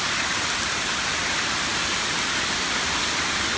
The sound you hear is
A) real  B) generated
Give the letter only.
A